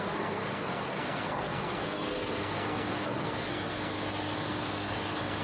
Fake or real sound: fake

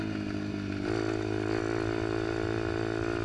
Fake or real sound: real